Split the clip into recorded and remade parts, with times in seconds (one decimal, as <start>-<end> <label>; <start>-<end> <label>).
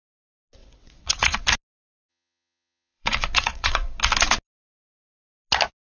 0.0-0.6 recorded; 0.6-1.4 remade; 1.4-2.1 recorded; 2.1-3.9 remade; 3.9-5.8 recorded